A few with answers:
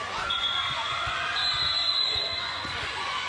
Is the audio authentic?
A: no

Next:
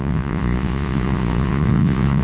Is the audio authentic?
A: no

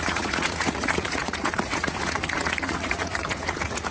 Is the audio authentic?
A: no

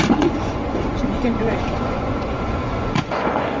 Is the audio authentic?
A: no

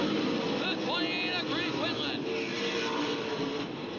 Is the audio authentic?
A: yes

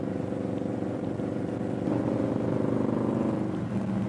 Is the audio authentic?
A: yes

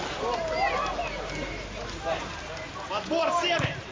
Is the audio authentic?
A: yes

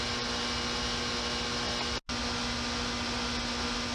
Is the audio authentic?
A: yes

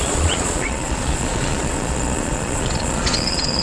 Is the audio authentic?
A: no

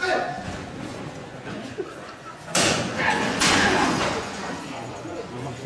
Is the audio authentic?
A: no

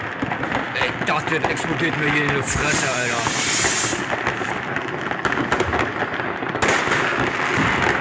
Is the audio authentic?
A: yes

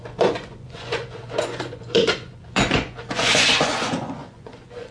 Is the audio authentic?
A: no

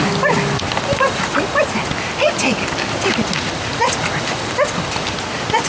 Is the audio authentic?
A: yes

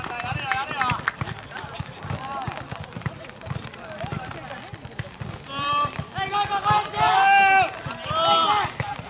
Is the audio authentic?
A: yes